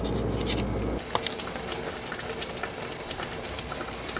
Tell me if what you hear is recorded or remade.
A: recorded